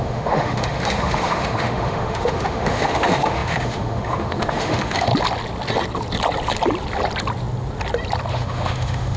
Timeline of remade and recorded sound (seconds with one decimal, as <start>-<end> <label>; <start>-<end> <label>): 0.0-5.1 remade; 5.1-8.3 recorded; 8.3-9.2 remade

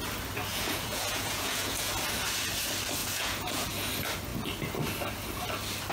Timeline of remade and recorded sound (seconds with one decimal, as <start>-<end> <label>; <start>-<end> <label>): 0.0-0.5 recorded; 0.5-1.9 remade; 1.9-3.0 recorded; 3.0-3.9 remade; 3.9-5.9 recorded

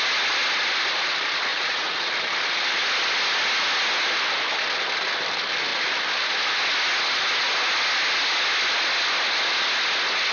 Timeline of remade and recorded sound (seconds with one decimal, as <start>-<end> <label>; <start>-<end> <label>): 0.0-1.5 recorded; 1.5-2.1 remade; 2.1-10.3 recorded

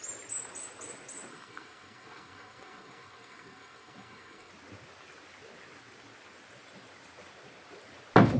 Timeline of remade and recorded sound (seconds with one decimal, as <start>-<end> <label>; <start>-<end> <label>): 0.0-1.3 recorded; 1.3-4.5 remade; 4.5-8.4 recorded

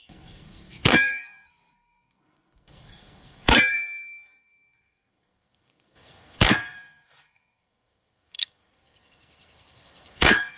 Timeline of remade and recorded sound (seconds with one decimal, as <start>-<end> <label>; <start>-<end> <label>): 0.0-10.6 remade

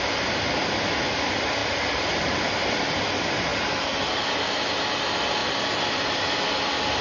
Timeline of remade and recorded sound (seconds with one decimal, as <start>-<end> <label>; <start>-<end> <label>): 0.0-1.6 recorded; 1.6-2.4 remade; 2.4-3.5 recorded; 3.5-4.1 remade; 4.1-7.0 recorded

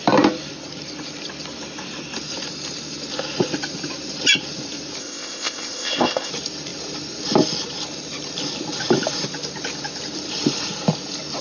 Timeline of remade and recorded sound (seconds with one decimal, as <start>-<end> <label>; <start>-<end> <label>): 0.0-5.0 recorded; 5.0-6.3 remade; 6.3-11.4 recorded

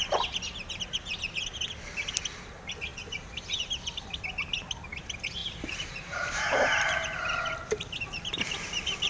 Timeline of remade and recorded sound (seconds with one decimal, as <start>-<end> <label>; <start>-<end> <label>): 0.0-2.9 recorded; 2.9-3.7 remade; 3.7-5.4 recorded; 5.4-7.5 remade; 7.5-9.1 recorded